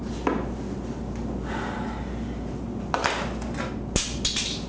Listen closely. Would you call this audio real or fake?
real